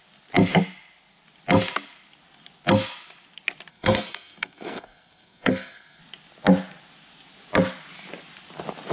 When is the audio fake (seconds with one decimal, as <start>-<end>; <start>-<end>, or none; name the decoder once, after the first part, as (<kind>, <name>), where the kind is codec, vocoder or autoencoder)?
3.7-6.0 (codec, SNAC)